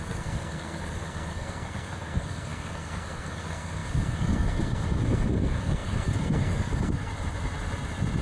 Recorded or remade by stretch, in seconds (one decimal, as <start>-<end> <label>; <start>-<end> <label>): 0.0-7.1 remade; 7.1-8.2 recorded